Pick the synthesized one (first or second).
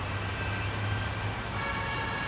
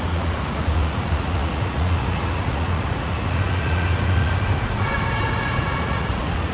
second